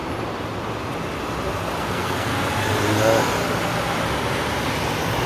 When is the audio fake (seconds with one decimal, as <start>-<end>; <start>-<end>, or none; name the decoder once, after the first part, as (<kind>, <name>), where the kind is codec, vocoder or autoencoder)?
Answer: 1.8-2.3 (codec, SNAC)